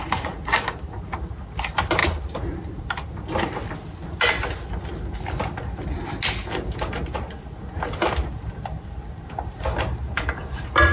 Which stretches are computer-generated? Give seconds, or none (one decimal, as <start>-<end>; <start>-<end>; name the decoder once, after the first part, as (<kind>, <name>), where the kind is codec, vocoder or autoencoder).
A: 2.0-2.8 (vocoder, BigVGAN v2)